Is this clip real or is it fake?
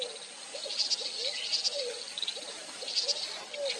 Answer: real